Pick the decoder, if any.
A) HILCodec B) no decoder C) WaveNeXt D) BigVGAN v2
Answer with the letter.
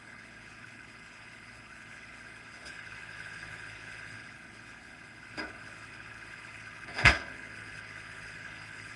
A